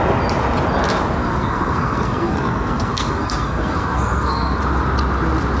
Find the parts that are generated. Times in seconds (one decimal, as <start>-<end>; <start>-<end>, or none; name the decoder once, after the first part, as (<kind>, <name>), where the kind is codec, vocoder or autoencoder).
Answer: 1.2-4.6 (codec, SNAC)